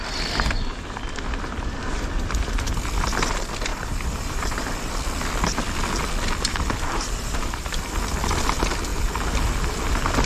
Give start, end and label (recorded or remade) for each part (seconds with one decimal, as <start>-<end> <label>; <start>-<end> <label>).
0.0-3.7 recorded; 3.7-4.9 remade; 4.9-6.5 recorded; 6.5-7.8 remade; 7.8-10.3 recorded